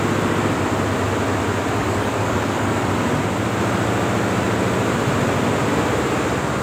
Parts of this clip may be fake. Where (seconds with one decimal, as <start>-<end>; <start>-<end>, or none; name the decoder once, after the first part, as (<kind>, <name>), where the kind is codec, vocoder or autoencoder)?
1.8-2.9 (codec, DAC)